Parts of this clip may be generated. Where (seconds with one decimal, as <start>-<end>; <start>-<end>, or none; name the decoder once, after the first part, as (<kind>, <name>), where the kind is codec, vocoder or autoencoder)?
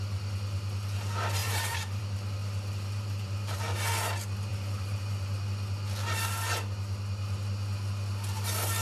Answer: 1.4-2.0 (vocoder, BigVGAN v2); 2.4-3.6; 4.5-5.4